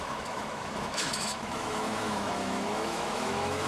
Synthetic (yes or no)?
yes